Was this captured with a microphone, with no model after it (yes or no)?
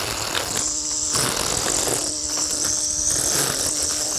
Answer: yes